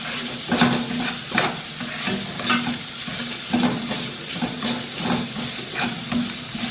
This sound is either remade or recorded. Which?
recorded